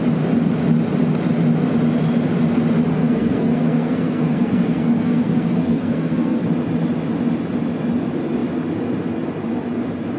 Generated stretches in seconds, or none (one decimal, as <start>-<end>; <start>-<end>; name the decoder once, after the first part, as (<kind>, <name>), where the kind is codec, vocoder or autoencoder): 2.9-6.4 (codec, SNAC)